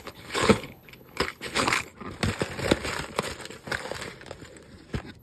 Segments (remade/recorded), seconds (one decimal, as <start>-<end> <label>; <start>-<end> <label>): 0.0-1.9 remade; 1.9-5.2 recorded